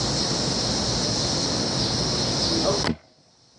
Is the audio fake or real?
real